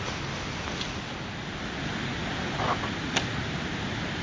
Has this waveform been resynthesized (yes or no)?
no